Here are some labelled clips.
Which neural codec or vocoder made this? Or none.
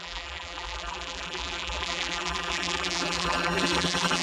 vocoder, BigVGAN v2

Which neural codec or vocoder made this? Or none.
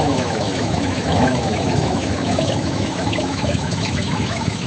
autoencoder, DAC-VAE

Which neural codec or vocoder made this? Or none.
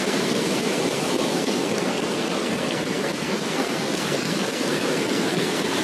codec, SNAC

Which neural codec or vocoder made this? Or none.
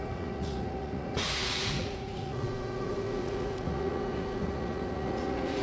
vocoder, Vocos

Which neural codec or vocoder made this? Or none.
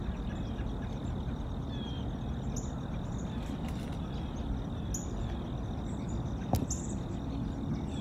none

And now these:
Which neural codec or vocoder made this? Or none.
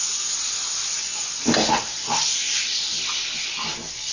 none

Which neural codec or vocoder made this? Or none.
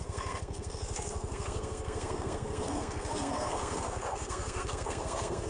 codec, SNAC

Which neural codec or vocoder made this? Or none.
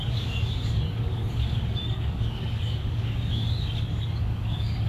codec, DAC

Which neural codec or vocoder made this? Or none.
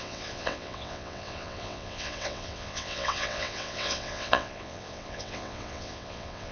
vocoder, WaveNeXt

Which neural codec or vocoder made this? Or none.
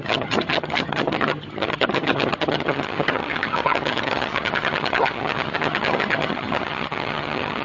vocoder, HiFi-GAN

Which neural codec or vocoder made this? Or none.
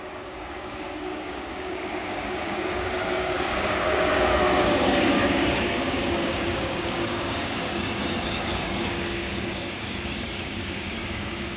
codec, DAC